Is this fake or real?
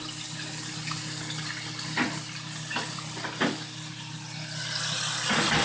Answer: real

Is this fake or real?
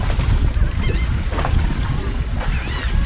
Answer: real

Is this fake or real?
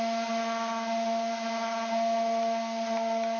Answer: real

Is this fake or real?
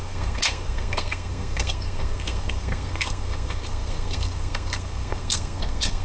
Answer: fake